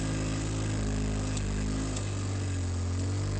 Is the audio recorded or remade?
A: recorded